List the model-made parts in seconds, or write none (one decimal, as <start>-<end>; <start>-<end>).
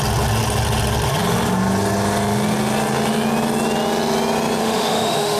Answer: 4.6-5.4